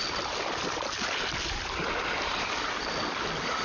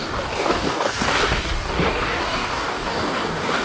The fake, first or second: second